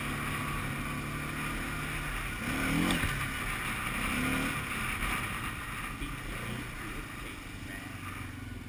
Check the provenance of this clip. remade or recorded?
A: recorded